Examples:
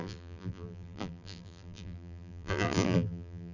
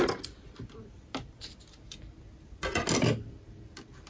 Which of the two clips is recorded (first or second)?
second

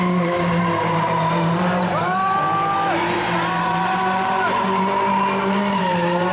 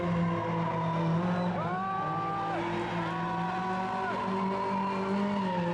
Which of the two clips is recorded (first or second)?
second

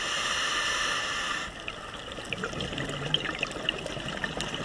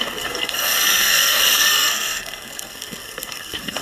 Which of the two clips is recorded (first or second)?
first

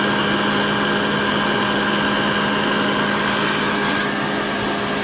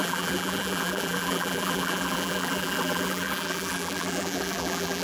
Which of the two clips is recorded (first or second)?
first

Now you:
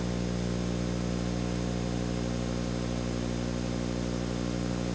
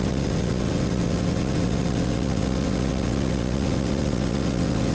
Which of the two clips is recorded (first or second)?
first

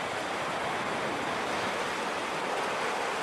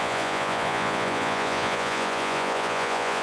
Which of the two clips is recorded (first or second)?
first